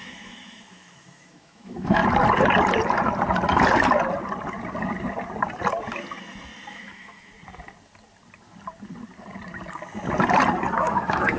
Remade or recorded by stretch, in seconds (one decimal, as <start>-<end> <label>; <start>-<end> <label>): 0.0-2.0 remade; 2.0-6.7 recorded; 6.7-7.3 remade; 7.3-10.8 recorded; 10.8-11.4 remade